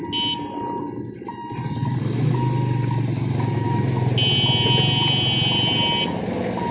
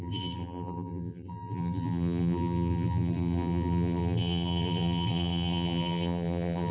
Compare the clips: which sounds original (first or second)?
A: first